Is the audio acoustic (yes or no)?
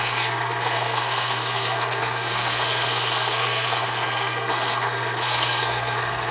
no